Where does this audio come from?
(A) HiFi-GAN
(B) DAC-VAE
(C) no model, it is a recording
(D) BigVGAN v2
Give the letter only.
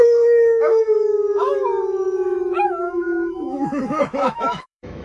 B